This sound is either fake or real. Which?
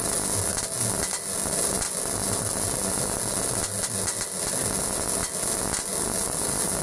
real